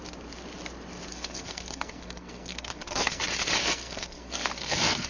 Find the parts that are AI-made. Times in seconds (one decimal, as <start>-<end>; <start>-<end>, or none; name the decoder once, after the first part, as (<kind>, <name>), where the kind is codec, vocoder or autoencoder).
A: 1.1-3.2 (codec, SNAC); 3.6-5.1